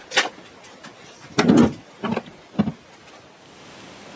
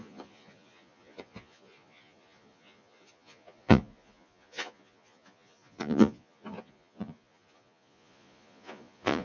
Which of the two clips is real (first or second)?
first